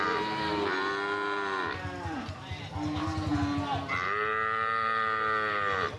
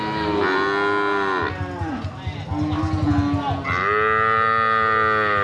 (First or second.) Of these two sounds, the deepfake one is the first